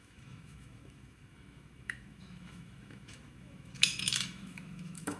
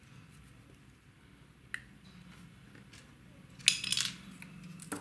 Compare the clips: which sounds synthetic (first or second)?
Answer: first